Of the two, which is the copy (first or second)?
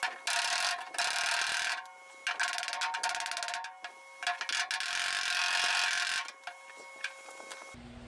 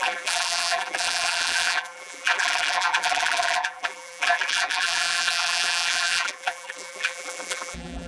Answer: second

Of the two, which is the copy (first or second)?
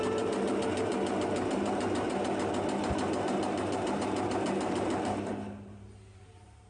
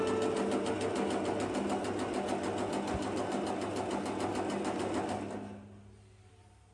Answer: first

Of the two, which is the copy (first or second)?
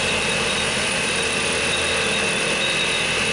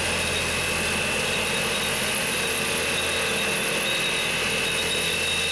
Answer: first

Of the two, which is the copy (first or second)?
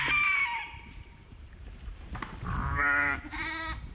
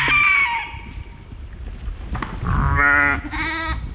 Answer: first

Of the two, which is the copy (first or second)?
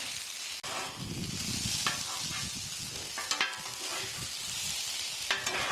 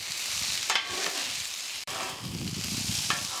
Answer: second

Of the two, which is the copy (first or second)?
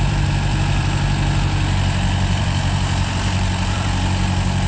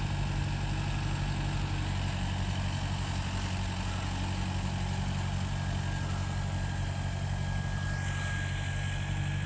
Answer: first